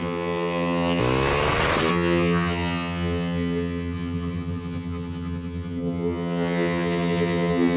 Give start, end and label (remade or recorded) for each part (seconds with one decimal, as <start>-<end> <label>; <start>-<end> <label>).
0.0-1.0 remade; 1.0-1.9 recorded; 1.9-7.8 remade